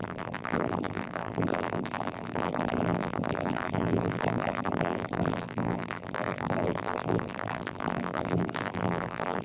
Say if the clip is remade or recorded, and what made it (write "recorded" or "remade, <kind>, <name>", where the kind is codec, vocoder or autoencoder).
remade, vocoder, BigVGAN v2